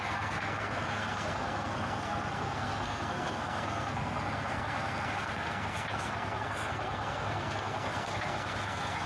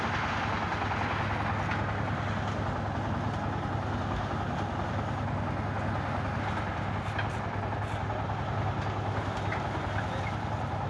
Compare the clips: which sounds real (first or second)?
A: second